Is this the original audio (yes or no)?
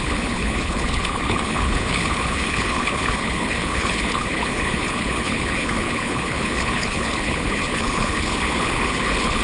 no